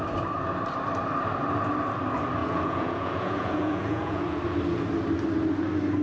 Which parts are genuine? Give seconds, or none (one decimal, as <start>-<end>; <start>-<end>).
0.0-2.4; 4.4-6.0